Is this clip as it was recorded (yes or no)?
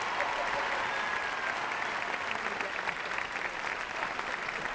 yes